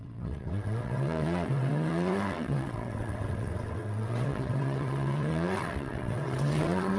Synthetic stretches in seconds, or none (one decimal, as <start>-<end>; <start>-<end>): 0.0-7.0